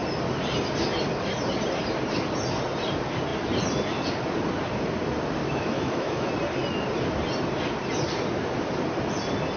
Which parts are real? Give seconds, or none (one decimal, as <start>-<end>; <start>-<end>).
0.0-5.4; 6.3-9.6

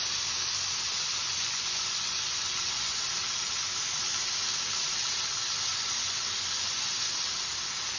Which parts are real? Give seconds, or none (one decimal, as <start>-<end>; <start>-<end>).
0.0-1.2; 3.0-5.7; 6.9-8.0